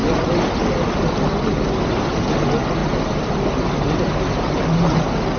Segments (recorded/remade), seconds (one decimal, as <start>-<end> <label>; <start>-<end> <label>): 0.0-2.8 recorded; 2.8-3.3 remade; 3.3-5.4 recorded